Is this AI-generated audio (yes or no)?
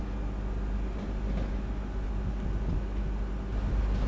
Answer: no